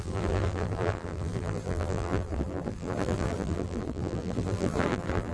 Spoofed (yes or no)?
yes